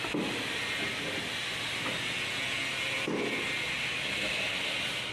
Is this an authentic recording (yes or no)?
yes